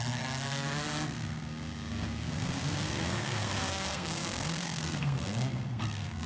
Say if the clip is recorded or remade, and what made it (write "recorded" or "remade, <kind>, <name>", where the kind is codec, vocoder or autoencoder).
remade, codec, SNAC